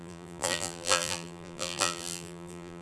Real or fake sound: fake